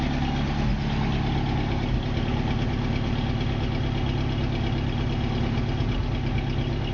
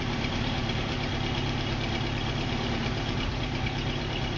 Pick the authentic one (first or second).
first